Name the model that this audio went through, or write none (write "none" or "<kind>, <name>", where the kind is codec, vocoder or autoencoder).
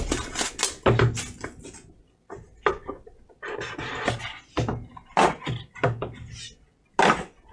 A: none